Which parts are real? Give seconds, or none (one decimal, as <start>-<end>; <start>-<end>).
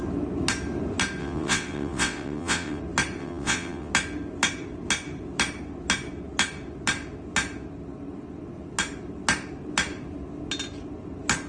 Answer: 0.0-1.2; 2.8-3.2; 3.9-11.5